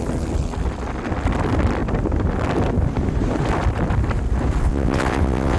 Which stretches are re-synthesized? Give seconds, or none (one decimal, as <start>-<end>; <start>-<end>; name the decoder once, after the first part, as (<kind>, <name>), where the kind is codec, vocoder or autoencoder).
4.6-5.6 (vocoder, WaveNeXt)